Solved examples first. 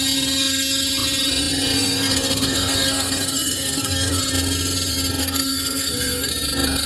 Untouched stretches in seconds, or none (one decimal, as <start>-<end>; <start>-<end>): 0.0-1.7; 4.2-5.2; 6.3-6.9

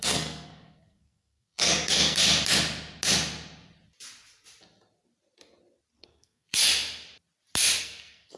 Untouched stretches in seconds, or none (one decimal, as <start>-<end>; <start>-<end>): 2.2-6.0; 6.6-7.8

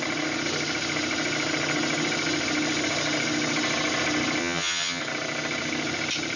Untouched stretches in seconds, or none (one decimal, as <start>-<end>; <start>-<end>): 0.0-4.4; 5.0-6.4